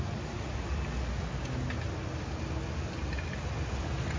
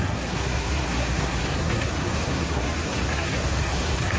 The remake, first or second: second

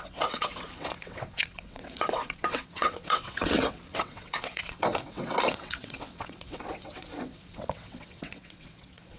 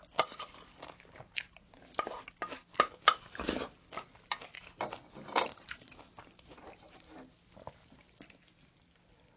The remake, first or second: first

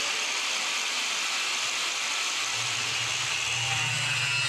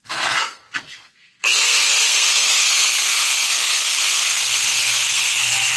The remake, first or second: second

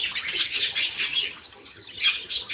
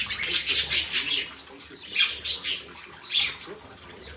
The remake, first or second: first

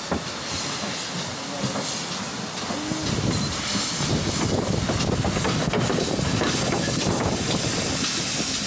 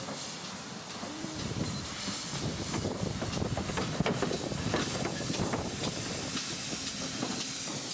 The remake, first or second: second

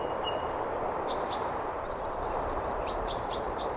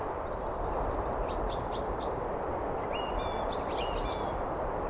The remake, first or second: first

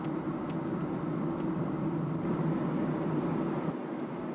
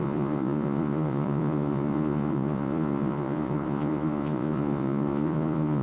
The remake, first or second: second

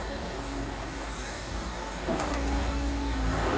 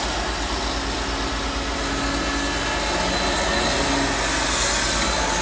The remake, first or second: first